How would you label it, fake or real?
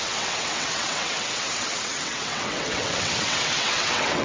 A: fake